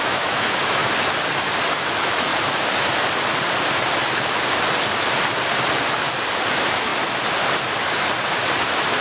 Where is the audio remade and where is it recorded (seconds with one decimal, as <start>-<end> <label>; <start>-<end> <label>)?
0.0-0.8 remade; 0.8-1.7 recorded; 1.7-2.3 remade; 2.3-6.5 recorded; 6.5-6.9 remade; 6.9-8.6 recorded; 8.6-9.0 remade